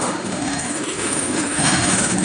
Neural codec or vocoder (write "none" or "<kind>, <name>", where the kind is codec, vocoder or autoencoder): autoencoder, DAC-VAE